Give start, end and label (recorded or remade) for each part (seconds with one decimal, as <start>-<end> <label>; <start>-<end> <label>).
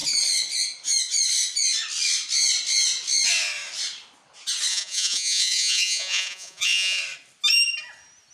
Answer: 0.0-4.7 recorded; 4.7-7.0 remade; 7.0-8.3 recorded